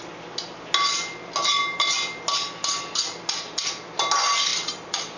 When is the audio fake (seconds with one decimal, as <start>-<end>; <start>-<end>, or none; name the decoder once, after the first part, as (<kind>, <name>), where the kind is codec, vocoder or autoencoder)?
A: 4.5-5.2 (vocoder, BigVGAN v2)